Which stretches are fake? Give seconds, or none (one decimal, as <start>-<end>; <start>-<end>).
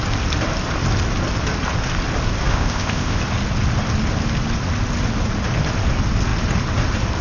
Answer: 2.5-3.2